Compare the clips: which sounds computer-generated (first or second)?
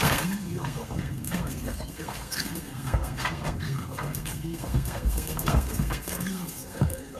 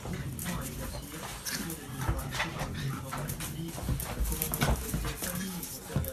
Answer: first